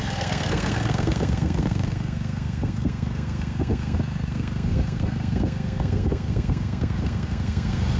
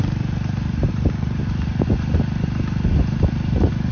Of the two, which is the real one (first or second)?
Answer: second